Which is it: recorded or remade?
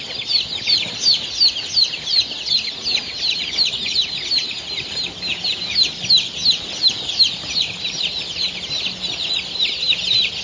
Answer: recorded